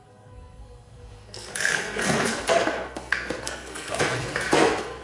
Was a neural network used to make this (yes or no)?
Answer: yes